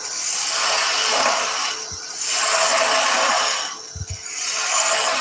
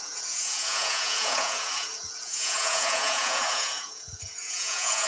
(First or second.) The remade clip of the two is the second